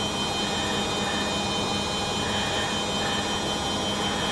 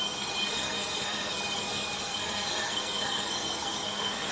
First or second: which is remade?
second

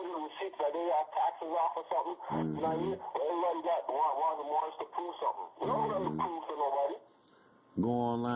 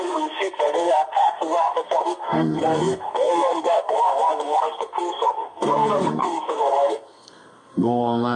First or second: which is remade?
second